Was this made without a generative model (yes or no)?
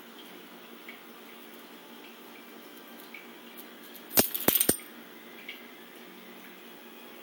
yes